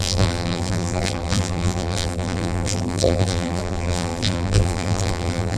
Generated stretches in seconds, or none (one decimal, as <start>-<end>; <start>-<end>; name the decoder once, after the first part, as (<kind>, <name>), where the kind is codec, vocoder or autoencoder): 0.0-5.6 (vocoder, BigVGAN v2)